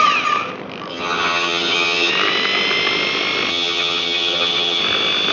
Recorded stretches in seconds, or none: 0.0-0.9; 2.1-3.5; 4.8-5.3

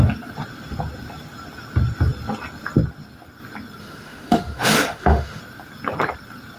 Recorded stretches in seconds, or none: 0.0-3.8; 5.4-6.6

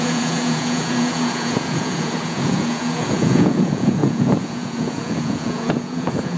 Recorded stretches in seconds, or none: none

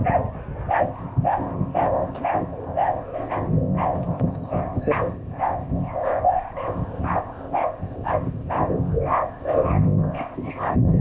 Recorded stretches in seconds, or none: 0.0-0.7

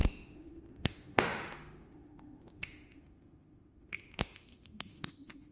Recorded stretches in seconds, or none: none

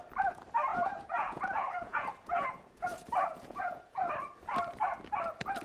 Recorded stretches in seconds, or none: 0.0-0.7; 4.1-5.6

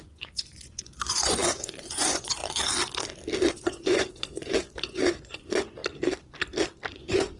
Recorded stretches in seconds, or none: 2.4-3.5; 5.8-6.9